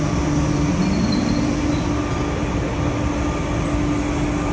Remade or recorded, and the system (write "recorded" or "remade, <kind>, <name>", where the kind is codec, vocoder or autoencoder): recorded